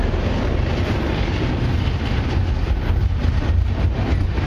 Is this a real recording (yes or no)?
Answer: yes